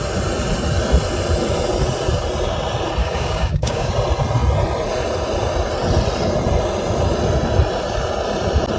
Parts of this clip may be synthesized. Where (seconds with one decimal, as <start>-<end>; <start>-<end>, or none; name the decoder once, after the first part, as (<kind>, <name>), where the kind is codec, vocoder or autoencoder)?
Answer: 3.0-3.9 (codec, DAC)